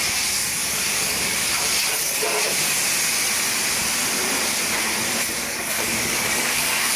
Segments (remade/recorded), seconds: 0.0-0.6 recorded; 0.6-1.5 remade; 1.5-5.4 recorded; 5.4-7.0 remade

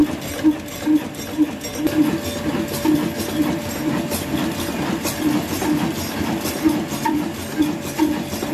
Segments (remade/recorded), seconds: 0.0-8.5 recorded

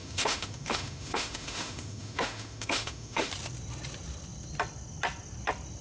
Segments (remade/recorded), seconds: 0.0-3.3 remade; 3.3-5.8 recorded

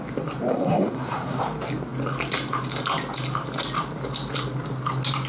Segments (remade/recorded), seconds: 0.0-0.5 recorded; 0.5-1.4 remade; 1.4-5.3 recorded

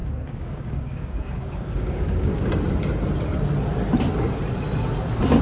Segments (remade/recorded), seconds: 0.0-2.5 remade; 2.5-5.4 recorded

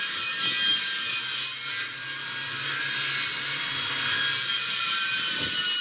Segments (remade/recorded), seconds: 0.0-5.8 recorded

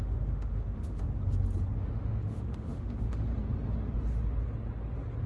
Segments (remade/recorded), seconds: 0.0-1.0 remade; 1.0-1.8 recorded; 1.8-3.3 remade; 3.3-5.3 recorded